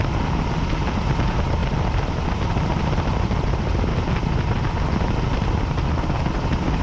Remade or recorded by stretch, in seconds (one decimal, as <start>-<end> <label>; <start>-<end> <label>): 0.0-6.8 recorded